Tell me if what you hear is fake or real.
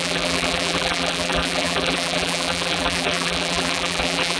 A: fake